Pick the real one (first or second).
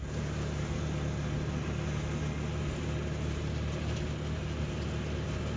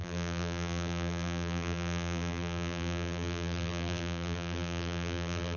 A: first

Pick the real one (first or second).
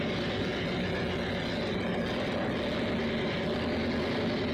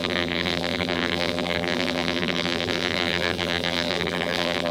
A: first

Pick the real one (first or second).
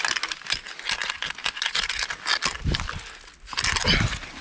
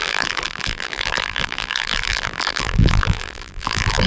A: first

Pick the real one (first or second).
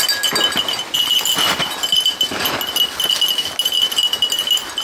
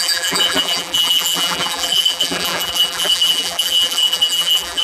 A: first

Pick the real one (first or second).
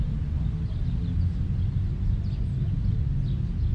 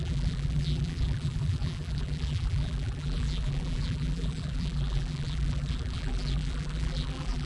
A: first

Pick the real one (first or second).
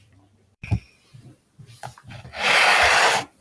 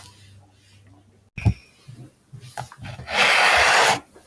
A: second